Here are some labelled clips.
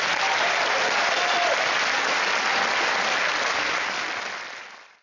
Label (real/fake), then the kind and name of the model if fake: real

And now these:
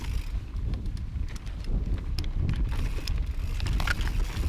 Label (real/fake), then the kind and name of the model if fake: real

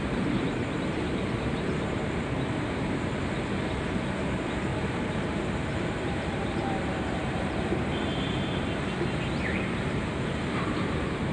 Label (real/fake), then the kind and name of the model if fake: fake, vocoder, BigVGAN v2